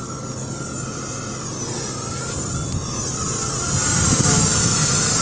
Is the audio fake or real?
real